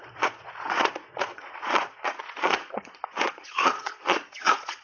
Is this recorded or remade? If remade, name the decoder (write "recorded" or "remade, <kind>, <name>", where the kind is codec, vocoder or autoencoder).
remade, vocoder, Vocos